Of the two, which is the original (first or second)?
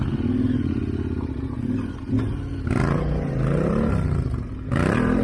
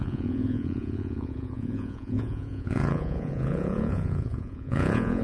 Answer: first